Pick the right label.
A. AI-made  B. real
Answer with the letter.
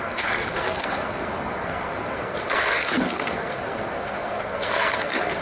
A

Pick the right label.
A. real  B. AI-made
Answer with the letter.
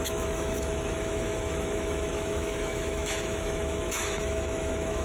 B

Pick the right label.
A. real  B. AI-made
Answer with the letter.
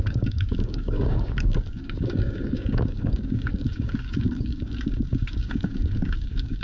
B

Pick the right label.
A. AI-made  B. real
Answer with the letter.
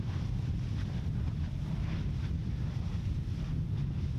B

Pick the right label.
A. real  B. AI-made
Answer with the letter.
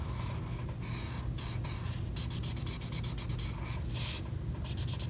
A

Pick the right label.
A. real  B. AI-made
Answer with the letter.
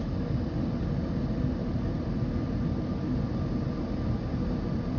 A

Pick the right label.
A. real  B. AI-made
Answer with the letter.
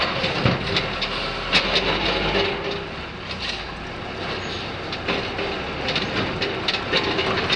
A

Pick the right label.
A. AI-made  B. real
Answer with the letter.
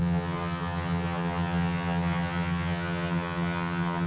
A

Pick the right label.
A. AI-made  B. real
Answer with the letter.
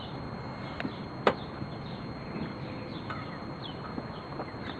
B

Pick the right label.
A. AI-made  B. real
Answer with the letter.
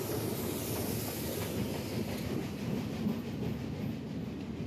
B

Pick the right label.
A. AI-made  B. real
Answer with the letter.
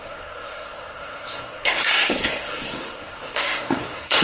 A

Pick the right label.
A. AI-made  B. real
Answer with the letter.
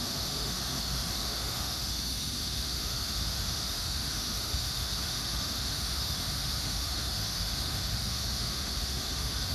A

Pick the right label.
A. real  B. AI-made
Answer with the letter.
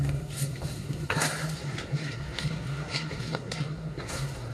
B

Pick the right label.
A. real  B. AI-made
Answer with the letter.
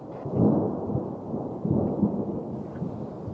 A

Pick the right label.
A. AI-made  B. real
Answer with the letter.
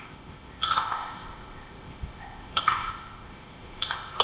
A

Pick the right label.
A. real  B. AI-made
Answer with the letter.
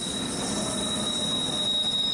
A